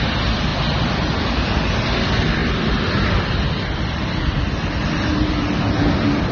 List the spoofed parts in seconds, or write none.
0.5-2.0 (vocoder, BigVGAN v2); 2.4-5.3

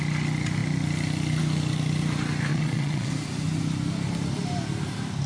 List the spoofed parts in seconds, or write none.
2.5-3.1 (vocoder, Vocos)